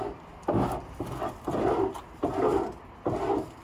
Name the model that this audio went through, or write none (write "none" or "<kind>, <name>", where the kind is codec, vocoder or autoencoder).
none